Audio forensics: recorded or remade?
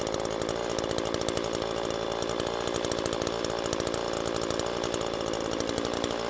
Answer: recorded